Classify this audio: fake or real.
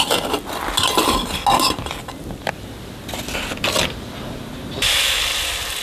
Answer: real